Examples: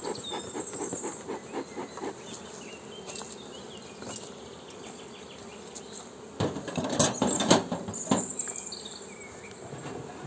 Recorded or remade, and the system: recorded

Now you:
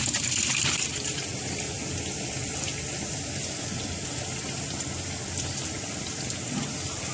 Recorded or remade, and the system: recorded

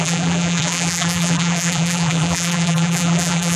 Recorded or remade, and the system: remade, vocoder, BigVGAN v2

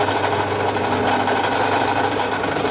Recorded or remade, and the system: recorded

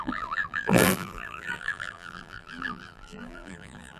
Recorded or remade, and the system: remade, vocoder, BigVGAN v2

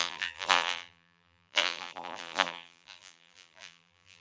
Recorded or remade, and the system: remade, vocoder, BigVGAN v2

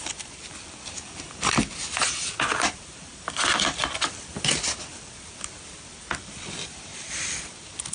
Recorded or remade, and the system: remade, vocoder, BigVGAN v2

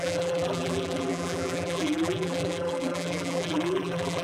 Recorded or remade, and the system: remade, vocoder, BigVGAN v2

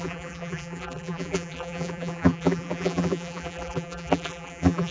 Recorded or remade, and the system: remade, vocoder, BigVGAN v2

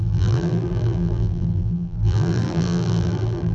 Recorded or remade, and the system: remade, vocoder, BigVGAN v2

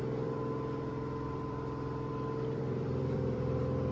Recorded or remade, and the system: remade, vocoder, BigVGAN v2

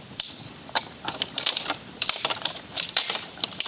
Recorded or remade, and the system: remade, vocoder, BigVGAN v2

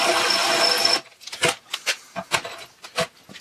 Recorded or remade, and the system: recorded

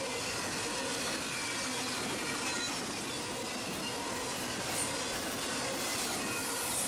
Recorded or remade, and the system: recorded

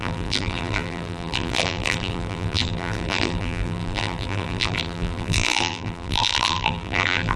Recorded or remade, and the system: remade, vocoder, BigVGAN v2